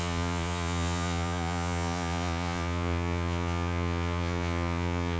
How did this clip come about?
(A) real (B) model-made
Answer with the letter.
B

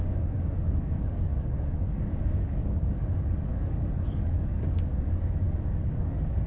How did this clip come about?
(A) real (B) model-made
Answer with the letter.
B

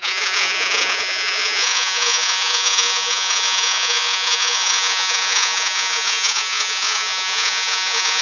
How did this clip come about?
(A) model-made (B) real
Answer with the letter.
A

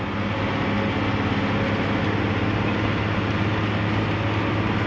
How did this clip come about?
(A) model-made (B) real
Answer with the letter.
B